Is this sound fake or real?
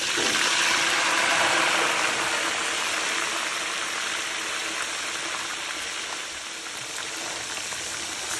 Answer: real